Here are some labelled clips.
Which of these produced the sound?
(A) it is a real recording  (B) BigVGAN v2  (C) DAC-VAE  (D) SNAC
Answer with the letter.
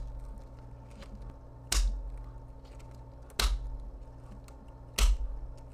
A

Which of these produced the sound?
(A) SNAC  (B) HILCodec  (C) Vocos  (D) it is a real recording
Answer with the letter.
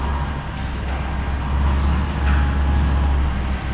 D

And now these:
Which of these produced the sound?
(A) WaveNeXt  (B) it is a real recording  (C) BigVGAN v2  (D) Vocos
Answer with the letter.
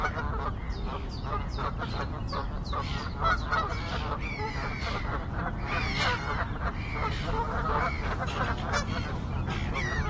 B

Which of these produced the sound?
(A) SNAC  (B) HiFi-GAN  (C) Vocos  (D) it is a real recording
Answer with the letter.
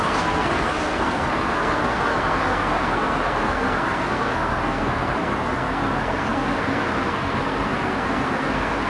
A